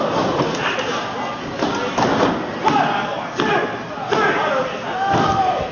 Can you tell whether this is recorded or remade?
recorded